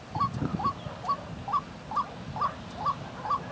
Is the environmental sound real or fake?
real